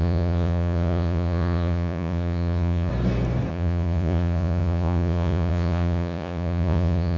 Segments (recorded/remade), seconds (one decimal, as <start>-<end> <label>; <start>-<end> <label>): 0.0-2.9 remade; 2.9-3.5 recorded; 3.5-7.2 remade